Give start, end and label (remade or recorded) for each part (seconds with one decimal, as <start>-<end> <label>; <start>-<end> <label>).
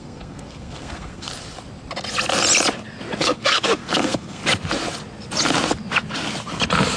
0.0-1.3 remade; 1.3-3.2 recorded; 3.2-4.4 remade; 4.4-7.0 recorded